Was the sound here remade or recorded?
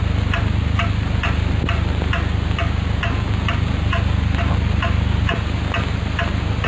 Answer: recorded